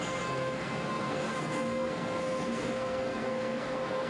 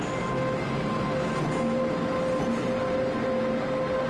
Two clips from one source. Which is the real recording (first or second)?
second